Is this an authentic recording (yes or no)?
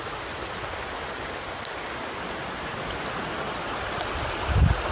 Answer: yes